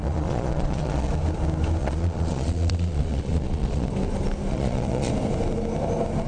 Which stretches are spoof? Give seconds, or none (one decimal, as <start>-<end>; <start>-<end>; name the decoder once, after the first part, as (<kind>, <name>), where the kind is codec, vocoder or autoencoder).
0.0-1.1 (vocoder, Vocos); 1.8-3.9; 4.5-5.1